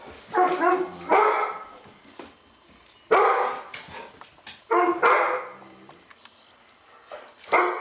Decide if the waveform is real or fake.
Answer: real